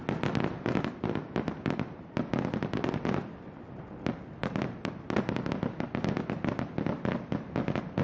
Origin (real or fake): real